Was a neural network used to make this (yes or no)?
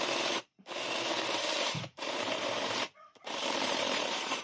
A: yes